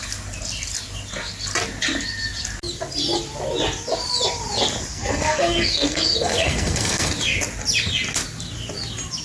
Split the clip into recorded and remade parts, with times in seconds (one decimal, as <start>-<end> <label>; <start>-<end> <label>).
0.0-4.9 recorded; 4.9-7.1 remade; 7.1-9.2 recorded